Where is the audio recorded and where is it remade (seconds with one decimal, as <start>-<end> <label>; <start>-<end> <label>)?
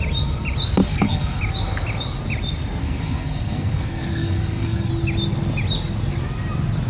0.0-0.9 recorded; 0.9-1.4 remade; 1.4-2.8 recorded; 2.8-4.9 remade; 4.9-6.9 recorded